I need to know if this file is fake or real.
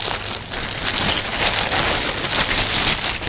real